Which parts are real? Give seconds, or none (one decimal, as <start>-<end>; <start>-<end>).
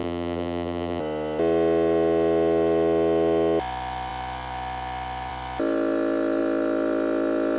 1.0-7.6